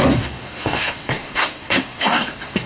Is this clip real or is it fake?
fake